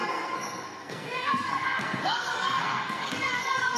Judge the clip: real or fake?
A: fake